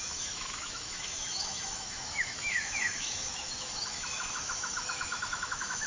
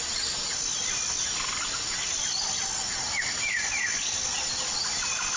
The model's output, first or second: first